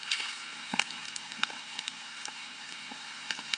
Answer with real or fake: fake